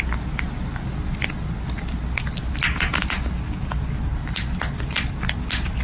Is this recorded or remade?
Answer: recorded